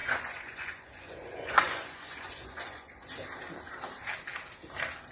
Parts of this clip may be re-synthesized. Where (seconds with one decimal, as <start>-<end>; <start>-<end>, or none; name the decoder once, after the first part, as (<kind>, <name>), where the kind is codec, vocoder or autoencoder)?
0.0-3.1 (vocoder, Vocos)